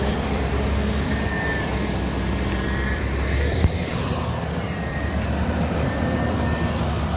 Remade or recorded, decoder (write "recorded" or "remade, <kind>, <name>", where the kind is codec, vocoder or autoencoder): remade, vocoder, BigVGAN v2